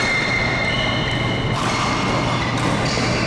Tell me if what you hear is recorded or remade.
recorded